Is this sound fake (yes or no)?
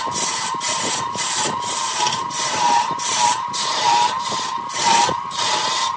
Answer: yes